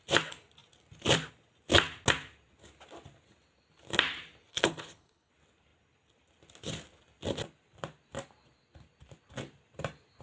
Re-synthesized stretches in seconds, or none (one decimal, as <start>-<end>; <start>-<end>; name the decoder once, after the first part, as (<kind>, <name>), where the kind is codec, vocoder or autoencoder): 4.5-5.3 (codec, HILCodec)